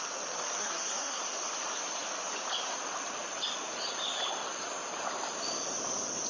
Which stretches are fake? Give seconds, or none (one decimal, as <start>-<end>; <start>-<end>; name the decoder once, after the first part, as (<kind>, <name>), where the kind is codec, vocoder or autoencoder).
0.6-1.2 (codec, SNAC)

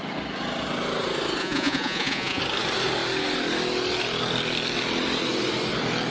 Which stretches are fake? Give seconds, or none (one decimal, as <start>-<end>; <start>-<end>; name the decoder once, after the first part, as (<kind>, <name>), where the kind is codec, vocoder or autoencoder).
1.4-2.4 (vocoder, Vocos)

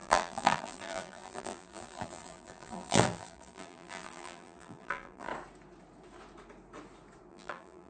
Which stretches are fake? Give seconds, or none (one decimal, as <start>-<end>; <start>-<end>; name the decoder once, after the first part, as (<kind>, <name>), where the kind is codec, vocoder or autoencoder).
0.0-5.3 (vocoder, BigVGAN v2); 7.3-7.9

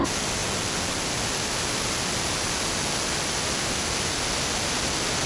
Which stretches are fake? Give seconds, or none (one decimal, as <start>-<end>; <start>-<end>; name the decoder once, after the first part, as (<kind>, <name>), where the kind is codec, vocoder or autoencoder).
none